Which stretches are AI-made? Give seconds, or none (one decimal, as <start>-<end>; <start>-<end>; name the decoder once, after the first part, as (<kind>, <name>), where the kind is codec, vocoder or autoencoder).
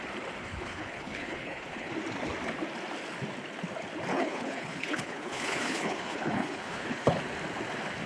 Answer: 0.4-1.9 (codec, HILCodec); 4.1-7.2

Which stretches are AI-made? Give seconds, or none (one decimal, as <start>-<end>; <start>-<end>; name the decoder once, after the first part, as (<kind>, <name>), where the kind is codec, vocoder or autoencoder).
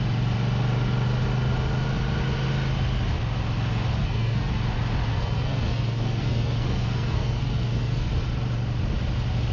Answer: 4.0-4.5 (codec, SNAC); 5.1-8.1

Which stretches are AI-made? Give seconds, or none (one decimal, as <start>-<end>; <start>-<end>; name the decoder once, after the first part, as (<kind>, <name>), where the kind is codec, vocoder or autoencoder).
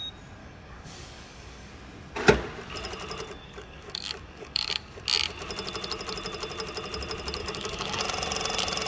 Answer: 0.4-1.7 (codec, DAC); 3.4-5.0; 7.4-8.0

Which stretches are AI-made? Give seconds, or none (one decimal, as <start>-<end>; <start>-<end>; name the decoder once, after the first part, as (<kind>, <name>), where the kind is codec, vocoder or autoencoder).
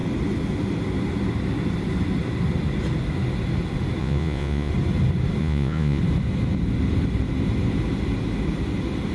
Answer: 4.0-4.7 (vocoder, Vocos); 5.4-6.0